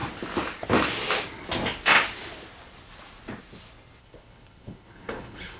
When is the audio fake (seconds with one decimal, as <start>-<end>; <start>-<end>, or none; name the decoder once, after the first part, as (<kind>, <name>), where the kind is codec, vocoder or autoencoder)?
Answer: 4.0-5.6 (codec, HILCodec)

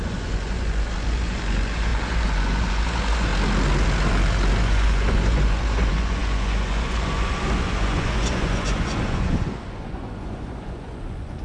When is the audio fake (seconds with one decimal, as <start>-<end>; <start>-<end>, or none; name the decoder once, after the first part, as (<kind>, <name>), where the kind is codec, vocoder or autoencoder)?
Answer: 0.0-3.3 (vocoder, Vocos); 4.6-11.4

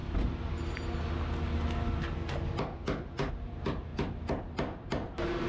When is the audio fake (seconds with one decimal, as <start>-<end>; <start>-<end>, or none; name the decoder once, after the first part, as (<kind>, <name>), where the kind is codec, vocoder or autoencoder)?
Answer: 3.3-3.9 (vocoder, BigVGAN v2); 4.4-5.5

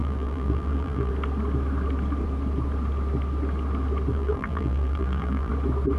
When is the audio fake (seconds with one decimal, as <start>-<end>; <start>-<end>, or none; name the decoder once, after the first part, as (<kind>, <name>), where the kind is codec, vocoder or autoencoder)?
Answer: 0.0-1.1 (vocoder, BigVGAN v2); 4.1-5.5

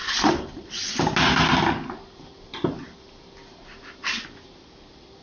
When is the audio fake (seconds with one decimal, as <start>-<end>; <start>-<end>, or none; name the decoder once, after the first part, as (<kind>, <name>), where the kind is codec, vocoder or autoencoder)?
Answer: none

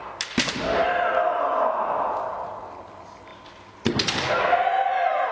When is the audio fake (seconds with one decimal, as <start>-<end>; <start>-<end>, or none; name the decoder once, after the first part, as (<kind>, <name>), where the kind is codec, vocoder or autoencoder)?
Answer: none

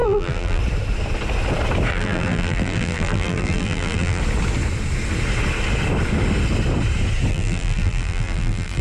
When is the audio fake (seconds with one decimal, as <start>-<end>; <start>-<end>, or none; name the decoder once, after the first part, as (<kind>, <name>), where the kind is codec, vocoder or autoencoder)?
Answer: 0.0-0.6 (vocoder, BigVGAN v2); 1.9-4.2; 7.3-8.8

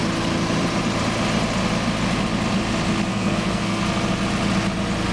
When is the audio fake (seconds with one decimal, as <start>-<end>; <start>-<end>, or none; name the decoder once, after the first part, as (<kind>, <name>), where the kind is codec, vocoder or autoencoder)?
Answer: 3.1-3.8 (codec, SNAC)